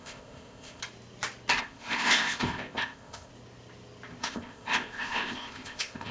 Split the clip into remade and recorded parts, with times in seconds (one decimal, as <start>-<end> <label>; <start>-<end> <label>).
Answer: 0.0-0.8 remade; 0.8-1.6 recorded; 1.6-3.3 remade; 3.3-4.2 recorded; 4.2-6.1 remade